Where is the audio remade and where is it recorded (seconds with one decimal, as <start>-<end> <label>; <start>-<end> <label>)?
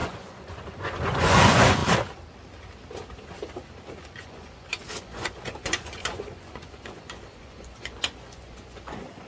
0.0-1.8 remade; 1.8-4.0 recorded; 4.0-9.3 remade